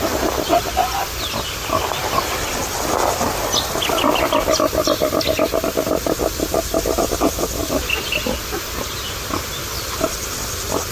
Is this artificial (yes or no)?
no